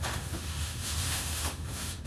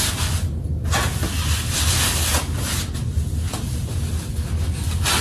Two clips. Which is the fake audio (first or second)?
first